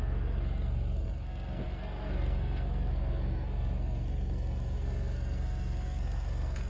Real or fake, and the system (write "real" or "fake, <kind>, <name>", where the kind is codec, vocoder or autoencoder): fake, codec, SNAC